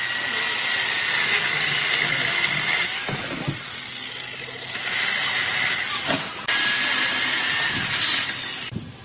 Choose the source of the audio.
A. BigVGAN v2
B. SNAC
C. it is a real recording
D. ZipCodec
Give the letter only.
C